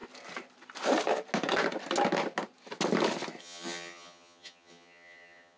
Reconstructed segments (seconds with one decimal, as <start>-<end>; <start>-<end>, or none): 3.4-5.6